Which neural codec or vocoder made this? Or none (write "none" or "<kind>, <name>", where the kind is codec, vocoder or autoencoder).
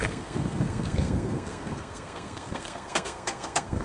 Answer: codec, SNAC